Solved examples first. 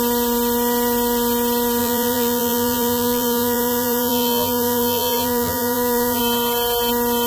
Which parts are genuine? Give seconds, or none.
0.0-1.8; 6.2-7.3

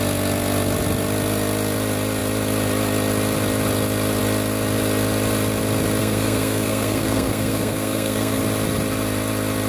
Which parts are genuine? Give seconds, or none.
0.0-6.0; 8.4-9.7

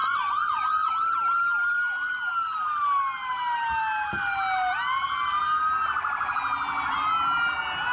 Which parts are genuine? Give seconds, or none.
0.9-7.9

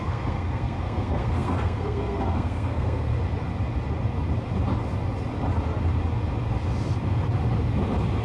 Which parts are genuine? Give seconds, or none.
3.1-8.2

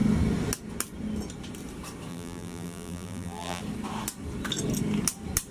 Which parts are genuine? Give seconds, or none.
0.0-2.1; 3.6-5.5

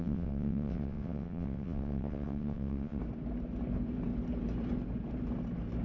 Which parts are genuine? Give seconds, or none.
3.0-5.8

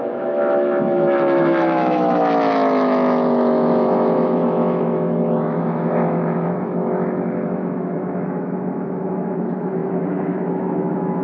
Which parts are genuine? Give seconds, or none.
none

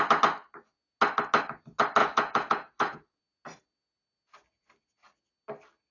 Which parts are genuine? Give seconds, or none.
0.0-2.0; 3.2-5.9